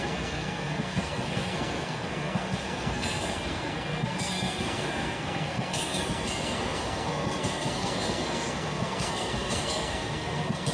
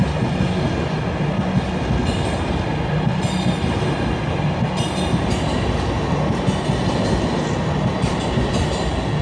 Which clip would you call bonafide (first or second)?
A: second